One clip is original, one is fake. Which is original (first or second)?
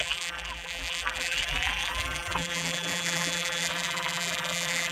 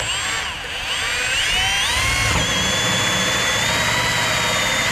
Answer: second